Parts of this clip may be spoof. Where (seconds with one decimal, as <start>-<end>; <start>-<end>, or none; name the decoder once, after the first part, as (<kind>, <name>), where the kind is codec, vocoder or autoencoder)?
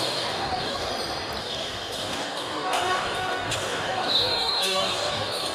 0.0-0.9 (codec, DAC); 1.4-5.5